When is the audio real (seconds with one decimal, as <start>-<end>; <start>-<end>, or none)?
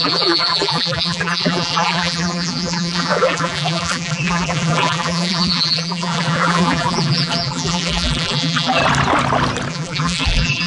8.8-9.7